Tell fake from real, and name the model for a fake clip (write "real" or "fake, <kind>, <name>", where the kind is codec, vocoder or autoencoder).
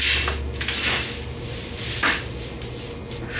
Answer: real